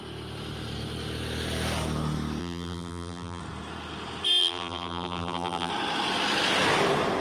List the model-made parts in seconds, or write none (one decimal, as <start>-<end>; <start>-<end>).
2.4-3.4; 4.4-5.7